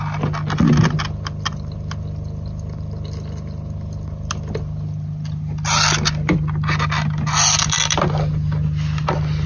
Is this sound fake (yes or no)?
no